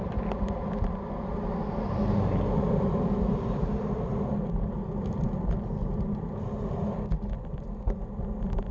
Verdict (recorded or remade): recorded